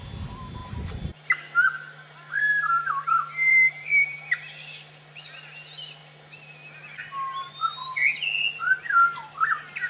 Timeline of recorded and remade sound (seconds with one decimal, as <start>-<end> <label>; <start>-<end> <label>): 0.0-3.5 recorded; 3.5-4.2 remade; 4.2-9.9 recorded